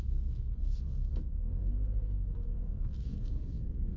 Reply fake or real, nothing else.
fake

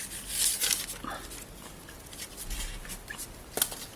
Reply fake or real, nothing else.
real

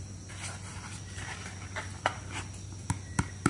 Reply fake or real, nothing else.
real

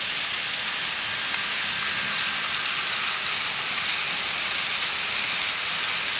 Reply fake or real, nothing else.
real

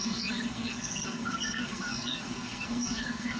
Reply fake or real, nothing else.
fake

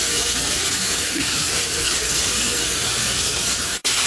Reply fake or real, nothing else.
fake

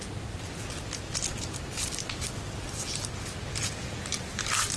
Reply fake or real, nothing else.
real